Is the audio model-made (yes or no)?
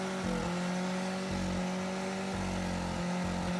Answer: no